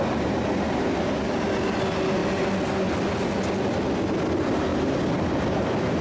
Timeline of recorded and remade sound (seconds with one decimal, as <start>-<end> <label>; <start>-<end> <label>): 0.0-4.7 recorded; 4.7-6.0 remade